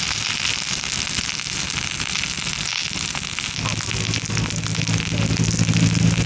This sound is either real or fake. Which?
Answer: real